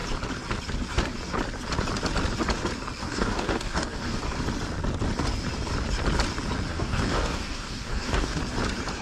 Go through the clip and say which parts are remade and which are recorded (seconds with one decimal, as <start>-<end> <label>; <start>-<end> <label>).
0.0-3.0 recorded; 3.0-4.2 remade; 4.2-6.7 recorded; 6.7-8.4 remade; 8.4-9.0 recorded